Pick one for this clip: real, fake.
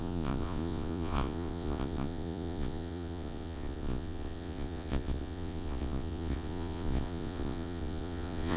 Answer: fake